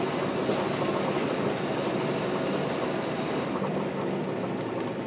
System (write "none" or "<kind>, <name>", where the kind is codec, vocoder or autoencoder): none